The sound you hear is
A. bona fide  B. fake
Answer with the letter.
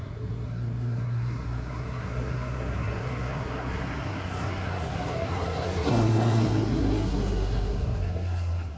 B